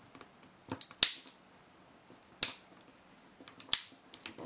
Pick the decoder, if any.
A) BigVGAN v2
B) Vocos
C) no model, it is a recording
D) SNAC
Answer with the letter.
C